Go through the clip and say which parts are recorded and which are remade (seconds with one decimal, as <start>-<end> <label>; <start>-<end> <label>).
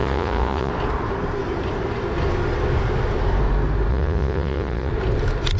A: 0.0-0.7 remade; 0.7-3.9 recorded; 3.9-4.9 remade; 4.9-5.6 recorded